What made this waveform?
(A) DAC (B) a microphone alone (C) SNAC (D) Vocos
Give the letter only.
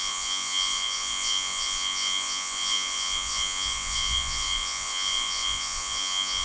D